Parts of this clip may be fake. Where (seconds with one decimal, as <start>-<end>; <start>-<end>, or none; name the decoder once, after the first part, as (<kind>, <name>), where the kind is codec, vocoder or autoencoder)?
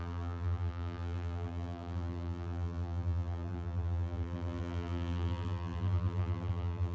0.0-6.9 (vocoder, BigVGAN v2)